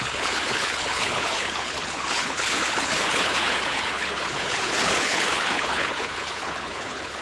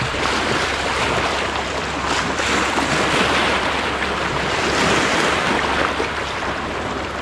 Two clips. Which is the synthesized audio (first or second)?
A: first